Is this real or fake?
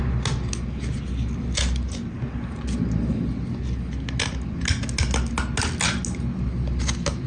real